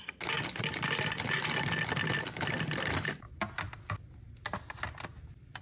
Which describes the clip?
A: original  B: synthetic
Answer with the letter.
A